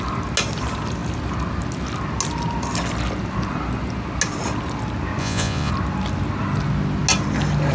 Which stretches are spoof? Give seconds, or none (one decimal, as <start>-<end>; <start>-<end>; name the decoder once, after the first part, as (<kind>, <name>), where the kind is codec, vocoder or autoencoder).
5.2-5.7 (vocoder, Vocos)

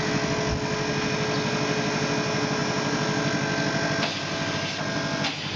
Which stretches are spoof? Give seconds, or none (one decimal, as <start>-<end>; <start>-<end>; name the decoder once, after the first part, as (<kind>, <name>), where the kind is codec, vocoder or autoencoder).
none

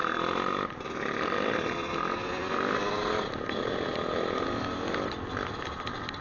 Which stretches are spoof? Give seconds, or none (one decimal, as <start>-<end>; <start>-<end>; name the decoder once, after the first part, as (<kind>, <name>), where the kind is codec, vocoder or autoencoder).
none

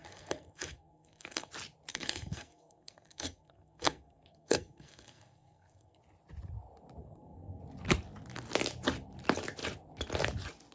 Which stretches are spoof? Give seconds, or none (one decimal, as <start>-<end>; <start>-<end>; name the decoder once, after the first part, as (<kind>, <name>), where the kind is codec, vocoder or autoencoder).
0.0-1.5 (codec, SNAC); 1.9-6.0; 7.0-7.6

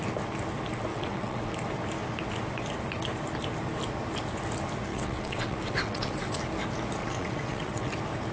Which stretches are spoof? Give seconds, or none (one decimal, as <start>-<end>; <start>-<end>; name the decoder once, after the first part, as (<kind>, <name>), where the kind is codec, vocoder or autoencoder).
0.9-1.5 (vocoder, WaveNeXt); 4.9-6.4; 7.0-7.9

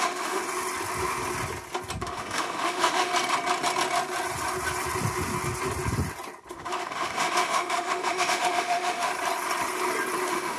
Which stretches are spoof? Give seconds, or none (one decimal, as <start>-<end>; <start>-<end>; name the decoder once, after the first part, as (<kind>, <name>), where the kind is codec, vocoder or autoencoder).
0.0-0.4 (autoencoder, DAC-VAE); 2.0-3.1; 6.5-9.1; 10.2-10.6

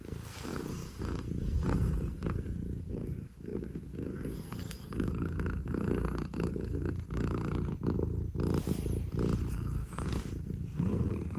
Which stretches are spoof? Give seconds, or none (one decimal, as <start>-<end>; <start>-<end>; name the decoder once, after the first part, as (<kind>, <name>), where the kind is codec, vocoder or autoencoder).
0.0-7.7 (codec, SNAC); 9.5-11.4

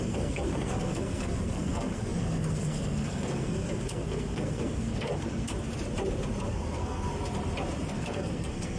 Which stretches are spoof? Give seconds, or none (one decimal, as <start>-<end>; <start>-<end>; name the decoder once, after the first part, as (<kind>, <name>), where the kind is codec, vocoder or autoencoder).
0.0-5.5 (codec, SNAC); 6.4-7.1; 7.9-8.8